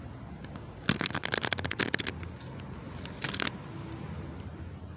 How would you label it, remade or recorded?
recorded